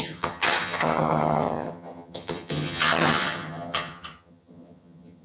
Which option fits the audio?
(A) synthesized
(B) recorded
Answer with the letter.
A